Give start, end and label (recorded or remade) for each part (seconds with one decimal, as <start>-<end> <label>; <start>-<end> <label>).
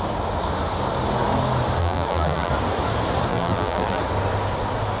0.0-1.8 recorded; 1.8-2.5 remade; 2.5-3.3 recorded; 3.3-4.0 remade; 4.0-5.0 recorded